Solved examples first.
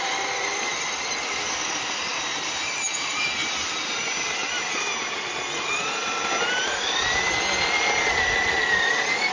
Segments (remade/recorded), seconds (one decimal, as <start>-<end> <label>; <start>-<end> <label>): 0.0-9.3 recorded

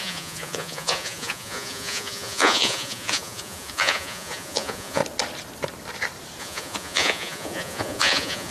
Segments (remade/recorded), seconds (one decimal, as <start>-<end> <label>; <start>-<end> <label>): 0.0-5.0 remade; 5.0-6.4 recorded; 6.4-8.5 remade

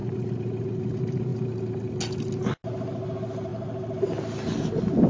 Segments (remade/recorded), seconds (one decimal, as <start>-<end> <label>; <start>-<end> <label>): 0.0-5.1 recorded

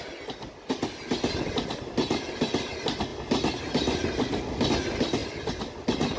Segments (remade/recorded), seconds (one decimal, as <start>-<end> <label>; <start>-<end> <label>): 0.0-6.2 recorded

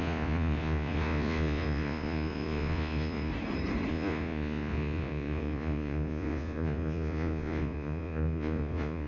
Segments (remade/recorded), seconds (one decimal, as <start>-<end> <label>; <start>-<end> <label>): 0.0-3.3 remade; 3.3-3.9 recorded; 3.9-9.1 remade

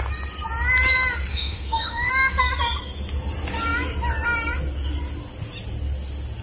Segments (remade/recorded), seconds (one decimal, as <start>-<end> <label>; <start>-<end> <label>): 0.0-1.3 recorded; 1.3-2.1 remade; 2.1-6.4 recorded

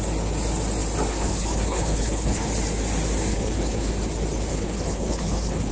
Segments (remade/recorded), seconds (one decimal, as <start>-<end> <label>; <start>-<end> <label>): 0.0-1.1 recorded; 1.1-2.5 remade; 2.5-3.3 recorded; 3.3-3.9 remade; 3.9-4.5 recorded; 4.5-5.7 remade

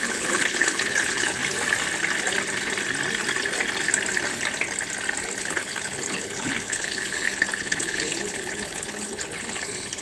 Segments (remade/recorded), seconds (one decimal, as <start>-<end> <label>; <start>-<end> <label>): 0.0-1.4 remade; 1.4-5.4 recorded; 5.4-10.0 remade